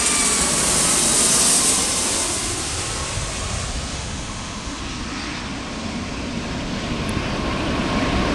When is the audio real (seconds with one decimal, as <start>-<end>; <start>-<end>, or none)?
0.0-3.9; 4.8-8.3